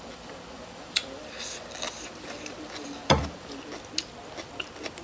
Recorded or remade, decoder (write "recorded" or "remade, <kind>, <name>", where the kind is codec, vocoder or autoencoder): recorded